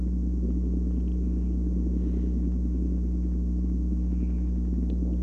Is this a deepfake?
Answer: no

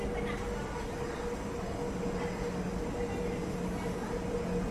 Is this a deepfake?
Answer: no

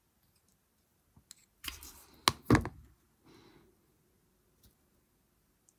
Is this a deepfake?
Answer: no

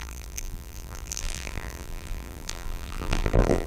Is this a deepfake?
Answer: yes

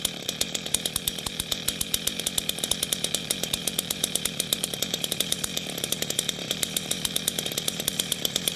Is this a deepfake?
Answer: yes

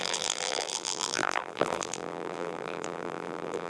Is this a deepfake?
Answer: yes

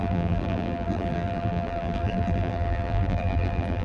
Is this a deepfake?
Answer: yes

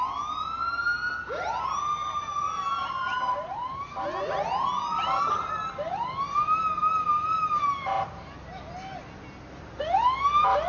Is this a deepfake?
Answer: no